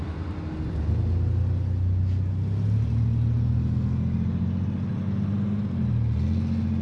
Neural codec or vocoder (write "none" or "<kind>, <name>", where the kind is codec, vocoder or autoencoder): none